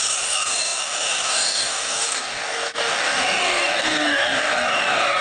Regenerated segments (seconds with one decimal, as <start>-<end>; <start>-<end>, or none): 0.0-5.2